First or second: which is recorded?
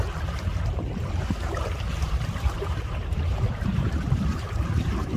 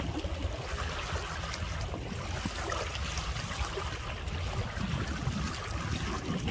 second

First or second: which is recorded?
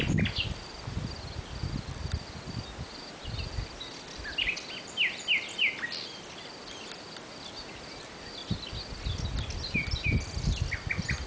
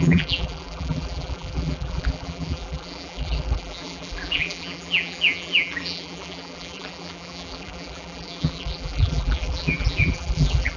first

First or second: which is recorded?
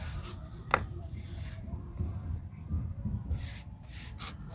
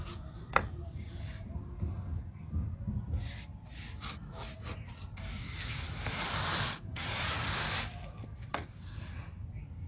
second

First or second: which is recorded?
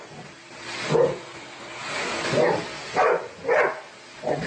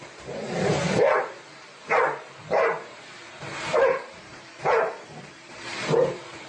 first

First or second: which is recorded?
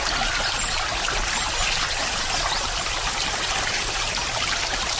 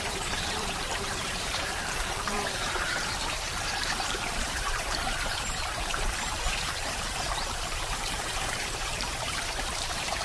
first